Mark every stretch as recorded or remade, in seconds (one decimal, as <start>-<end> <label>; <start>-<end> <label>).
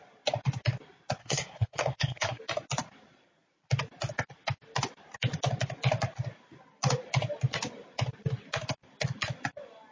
0.0-1.2 recorded; 1.2-2.4 remade; 2.4-9.9 recorded